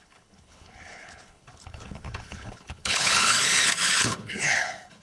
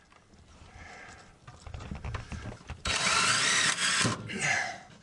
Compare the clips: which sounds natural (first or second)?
second